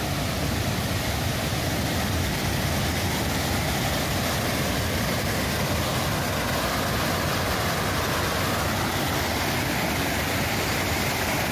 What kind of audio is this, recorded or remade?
recorded